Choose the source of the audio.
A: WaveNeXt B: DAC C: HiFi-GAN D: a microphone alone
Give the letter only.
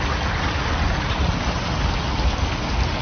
D